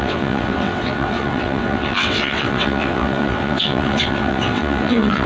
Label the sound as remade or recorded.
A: remade